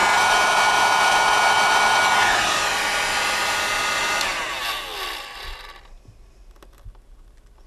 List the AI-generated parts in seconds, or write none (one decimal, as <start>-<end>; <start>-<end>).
none